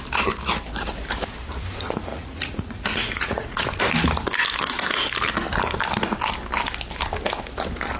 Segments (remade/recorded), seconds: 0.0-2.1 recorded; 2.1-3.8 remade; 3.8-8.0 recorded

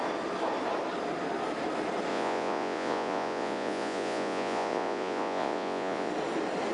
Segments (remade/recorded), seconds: 0.0-2.1 recorded; 2.1-6.1 remade; 6.1-6.7 recorded

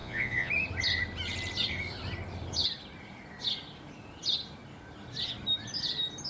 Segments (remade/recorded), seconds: 0.0-0.5 remade; 0.5-6.3 recorded